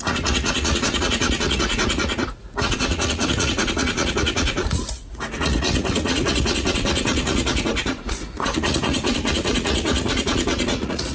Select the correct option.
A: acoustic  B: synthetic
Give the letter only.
B